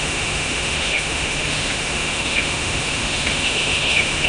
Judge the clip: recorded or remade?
remade